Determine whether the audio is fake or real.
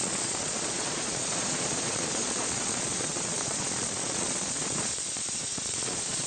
fake